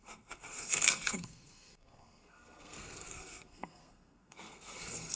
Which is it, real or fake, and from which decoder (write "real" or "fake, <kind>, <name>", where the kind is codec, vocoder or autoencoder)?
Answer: fake, codec, SNAC